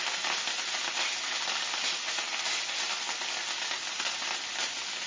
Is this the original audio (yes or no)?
yes